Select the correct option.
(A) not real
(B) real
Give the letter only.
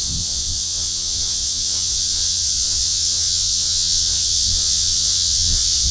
A